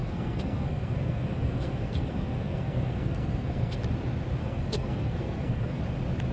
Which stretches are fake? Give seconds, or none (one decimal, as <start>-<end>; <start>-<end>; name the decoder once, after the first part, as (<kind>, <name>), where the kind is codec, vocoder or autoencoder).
0.0-3.8 (codec, SNAC); 4.4-5.8